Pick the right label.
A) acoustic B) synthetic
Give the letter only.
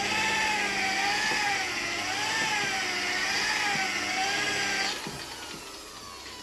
A